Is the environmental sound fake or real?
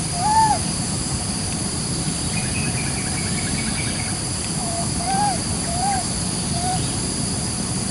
fake